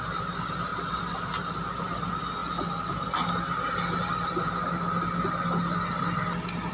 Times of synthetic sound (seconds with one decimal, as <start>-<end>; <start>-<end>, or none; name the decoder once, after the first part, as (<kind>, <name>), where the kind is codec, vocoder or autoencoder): none